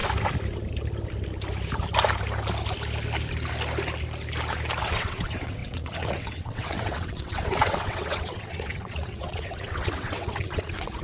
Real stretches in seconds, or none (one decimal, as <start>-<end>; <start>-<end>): 0.0-4.8